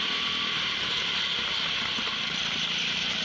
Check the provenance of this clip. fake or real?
real